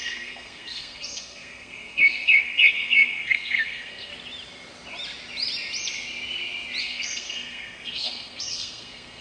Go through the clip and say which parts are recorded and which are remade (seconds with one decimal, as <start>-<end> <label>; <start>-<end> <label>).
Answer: 0.0-4.1 remade; 4.1-6.8 recorded; 6.8-9.2 remade